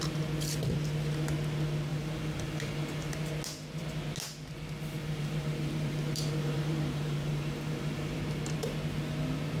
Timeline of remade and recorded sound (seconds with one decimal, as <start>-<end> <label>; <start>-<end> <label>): 0.0-1.9 recorded; 1.9-3.3 remade; 3.3-5.0 recorded; 5.0-8.2 remade; 8.2-9.6 recorded